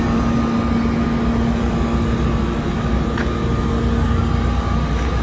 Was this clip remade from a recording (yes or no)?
no